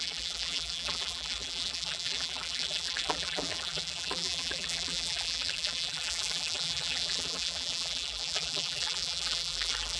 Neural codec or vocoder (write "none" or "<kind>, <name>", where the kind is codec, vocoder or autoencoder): vocoder, BigVGAN v2